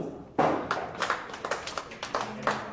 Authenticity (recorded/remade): recorded